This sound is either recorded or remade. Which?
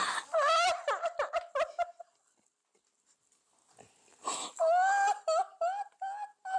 recorded